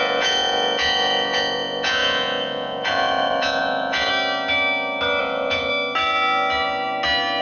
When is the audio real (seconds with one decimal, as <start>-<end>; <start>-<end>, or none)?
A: 4.1-5.2; 5.7-7.4